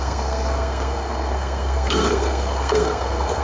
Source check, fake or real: fake